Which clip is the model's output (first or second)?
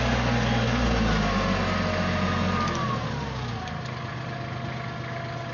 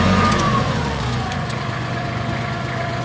second